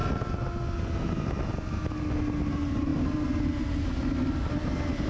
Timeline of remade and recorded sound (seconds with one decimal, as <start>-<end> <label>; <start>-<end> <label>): 0.0-5.1 recorded